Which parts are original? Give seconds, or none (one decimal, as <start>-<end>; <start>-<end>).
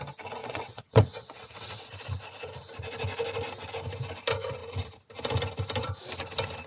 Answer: 0.0-0.4; 1.9-6.7